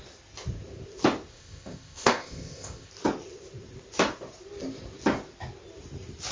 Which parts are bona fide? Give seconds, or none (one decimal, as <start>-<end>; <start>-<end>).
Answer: 0.0-1.3; 2.9-6.3

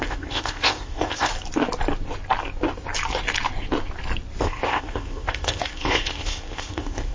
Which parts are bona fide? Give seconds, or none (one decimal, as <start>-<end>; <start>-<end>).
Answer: 1.3-4.4

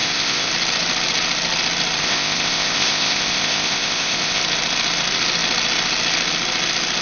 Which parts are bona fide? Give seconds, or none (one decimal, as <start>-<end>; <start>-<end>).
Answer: 0.5-2.0; 4.4-7.0

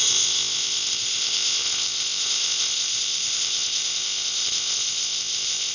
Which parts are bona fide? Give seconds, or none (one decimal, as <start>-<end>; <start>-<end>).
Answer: none